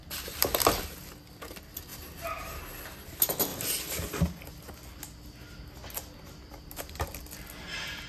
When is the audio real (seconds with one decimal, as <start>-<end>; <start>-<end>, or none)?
0.8-1.9; 2.6-8.1